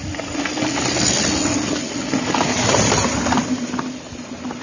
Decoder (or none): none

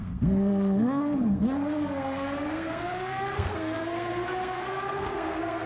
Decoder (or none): codec, SNAC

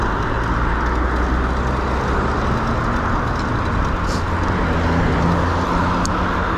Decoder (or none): none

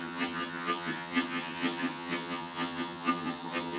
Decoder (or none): vocoder, HiFi-GAN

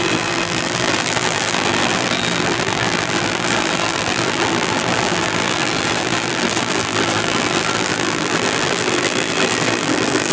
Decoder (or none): vocoder, BigVGAN v2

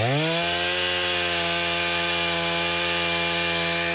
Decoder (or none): none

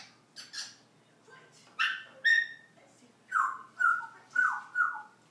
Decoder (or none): none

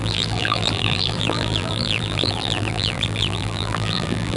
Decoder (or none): vocoder, BigVGAN v2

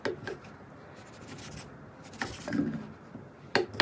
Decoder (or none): none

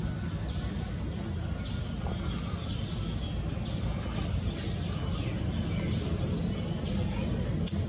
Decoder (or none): none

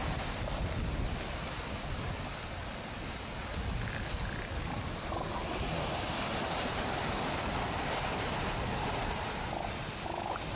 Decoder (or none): none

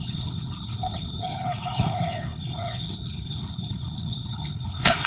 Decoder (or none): codec, HILCodec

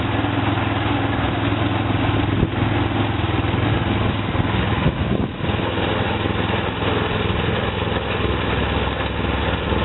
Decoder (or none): none